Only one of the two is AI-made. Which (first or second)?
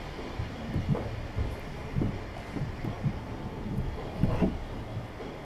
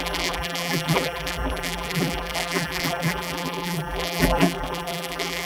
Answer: second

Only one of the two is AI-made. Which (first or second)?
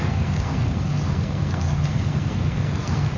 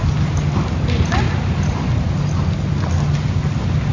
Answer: first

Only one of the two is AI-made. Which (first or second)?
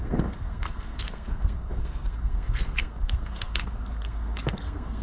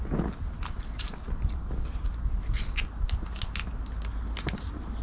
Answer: first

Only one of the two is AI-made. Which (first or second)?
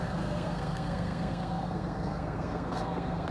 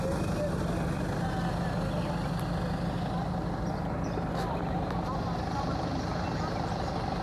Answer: first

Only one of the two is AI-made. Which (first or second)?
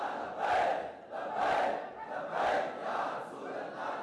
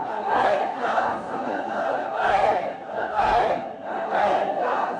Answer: second